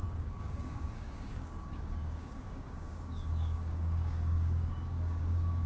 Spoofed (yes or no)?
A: yes